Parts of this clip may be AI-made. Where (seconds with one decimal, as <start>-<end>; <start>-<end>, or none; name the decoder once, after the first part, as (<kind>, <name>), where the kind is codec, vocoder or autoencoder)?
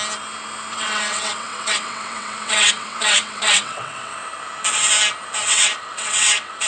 0.7-4.1 (vocoder, WaveNeXt); 5.4-6.7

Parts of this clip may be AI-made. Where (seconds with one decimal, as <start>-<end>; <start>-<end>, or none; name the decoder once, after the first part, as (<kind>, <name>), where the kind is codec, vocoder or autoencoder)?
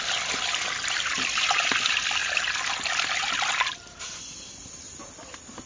none